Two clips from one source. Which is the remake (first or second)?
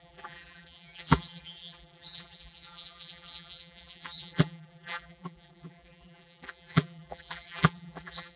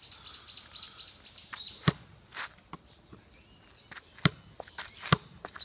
first